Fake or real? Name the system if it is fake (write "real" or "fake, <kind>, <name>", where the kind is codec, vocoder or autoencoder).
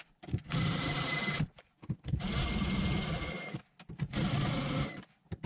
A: real